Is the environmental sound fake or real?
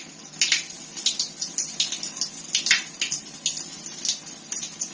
real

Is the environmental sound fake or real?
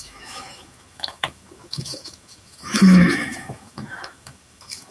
fake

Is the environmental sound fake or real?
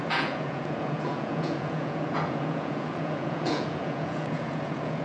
fake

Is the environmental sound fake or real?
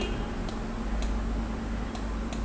real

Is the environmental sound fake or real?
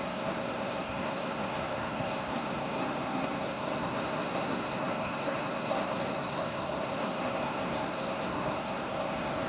fake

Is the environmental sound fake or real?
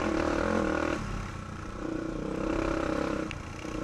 real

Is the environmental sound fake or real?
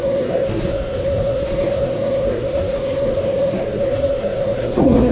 fake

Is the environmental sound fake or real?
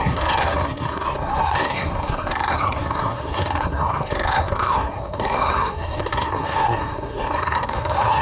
fake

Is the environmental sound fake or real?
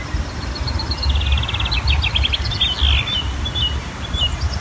real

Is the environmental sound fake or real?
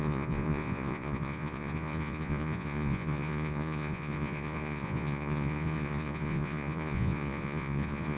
fake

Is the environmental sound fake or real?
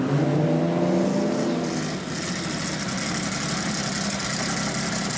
real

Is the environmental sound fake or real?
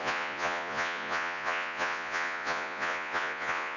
fake